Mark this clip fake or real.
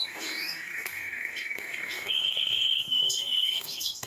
fake